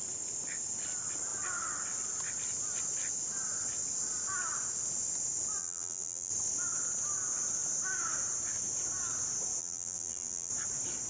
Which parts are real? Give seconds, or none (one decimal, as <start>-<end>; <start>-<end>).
0.0-5.6; 6.3-9.6; 10.5-11.1